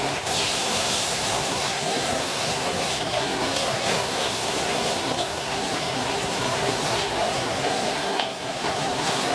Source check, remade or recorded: remade